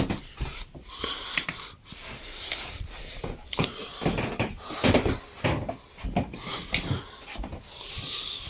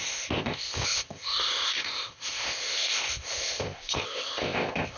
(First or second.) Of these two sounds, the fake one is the second